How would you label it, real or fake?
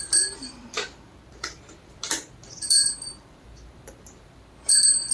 fake